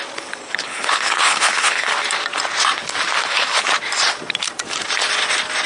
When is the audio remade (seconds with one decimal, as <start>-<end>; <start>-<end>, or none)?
0.4-1.9; 3.2-3.7